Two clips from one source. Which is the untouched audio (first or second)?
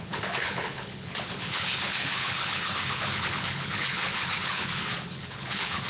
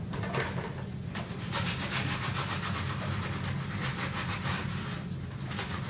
second